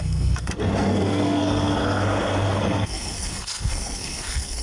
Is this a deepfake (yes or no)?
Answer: yes